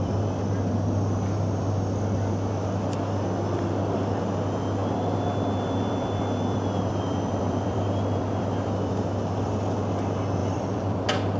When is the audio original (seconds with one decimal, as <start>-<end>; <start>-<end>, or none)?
0.0-4.8; 9.0-10.4; 11.0-11.4